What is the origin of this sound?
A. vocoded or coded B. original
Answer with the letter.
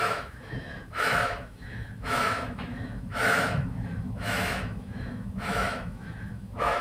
A